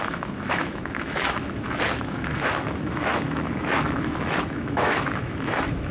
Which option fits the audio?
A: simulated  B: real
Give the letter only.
A